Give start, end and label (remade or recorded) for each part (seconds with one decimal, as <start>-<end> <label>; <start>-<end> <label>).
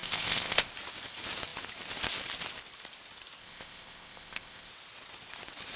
0.0-0.7 remade; 0.7-3.4 recorded; 3.4-4.7 remade; 4.7-5.8 recorded